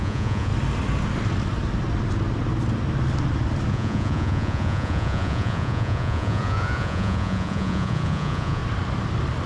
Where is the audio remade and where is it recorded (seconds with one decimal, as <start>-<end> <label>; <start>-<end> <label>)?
0.0-0.5 remade; 0.5-3.7 recorded; 3.7-8.6 remade; 8.6-9.5 recorded